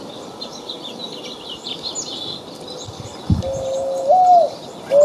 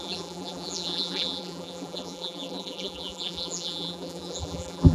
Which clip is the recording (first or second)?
first